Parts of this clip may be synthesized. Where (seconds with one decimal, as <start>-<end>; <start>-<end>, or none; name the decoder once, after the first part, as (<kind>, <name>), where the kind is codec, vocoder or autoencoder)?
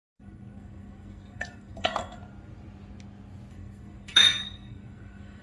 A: 0.0-2.2 (codec, SNAC); 3.5-5.4